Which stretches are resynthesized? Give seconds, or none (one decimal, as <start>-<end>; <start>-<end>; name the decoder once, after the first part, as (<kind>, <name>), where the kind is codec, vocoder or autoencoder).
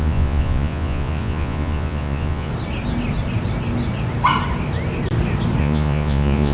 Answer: 0.0-2.5 (vocoder, Vocos); 5.6-6.5